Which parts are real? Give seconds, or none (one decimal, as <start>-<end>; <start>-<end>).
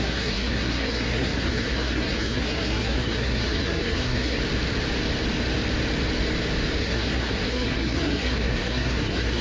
4.4-6.8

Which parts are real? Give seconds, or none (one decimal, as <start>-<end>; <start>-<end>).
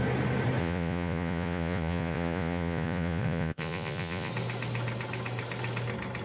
0.0-0.6; 4.3-6.2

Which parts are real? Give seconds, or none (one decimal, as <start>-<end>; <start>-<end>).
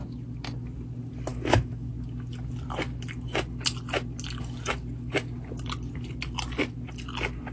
0.0-1.3; 1.9-7.5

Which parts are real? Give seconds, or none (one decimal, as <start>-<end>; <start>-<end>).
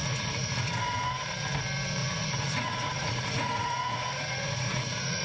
0.8-2.0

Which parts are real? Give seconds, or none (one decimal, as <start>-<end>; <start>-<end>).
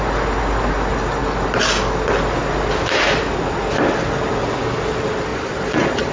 0.0-5.3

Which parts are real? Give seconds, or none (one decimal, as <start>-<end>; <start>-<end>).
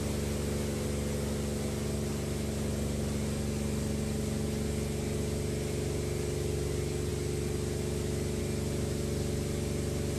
0.0-10.2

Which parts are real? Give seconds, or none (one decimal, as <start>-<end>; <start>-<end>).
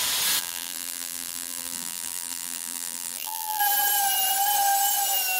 0.0-0.4; 3.6-5.4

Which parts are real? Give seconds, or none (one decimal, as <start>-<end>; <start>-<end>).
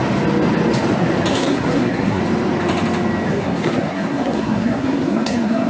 0.0-1.3; 2.2-3.3